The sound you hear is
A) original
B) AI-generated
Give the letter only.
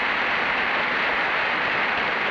A